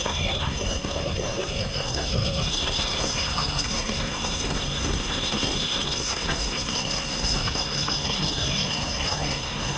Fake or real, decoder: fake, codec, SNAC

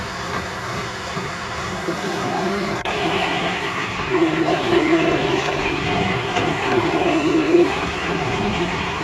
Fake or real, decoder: fake, codec, SNAC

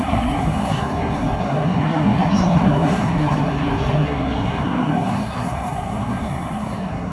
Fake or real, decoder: fake, codec, SNAC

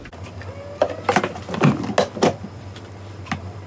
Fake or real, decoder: real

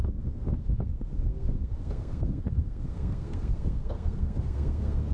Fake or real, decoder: fake, codec, SNAC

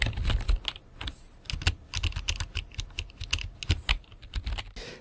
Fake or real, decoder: real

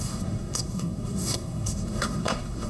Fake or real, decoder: fake, codec, SNAC